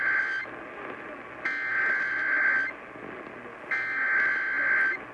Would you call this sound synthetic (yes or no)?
no